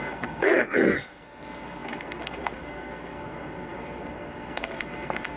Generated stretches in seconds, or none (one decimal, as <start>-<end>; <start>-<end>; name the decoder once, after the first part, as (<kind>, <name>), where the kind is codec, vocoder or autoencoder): 0.0-5.4 (codec, SNAC)